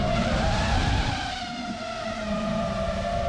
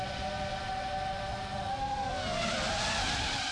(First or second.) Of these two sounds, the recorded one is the second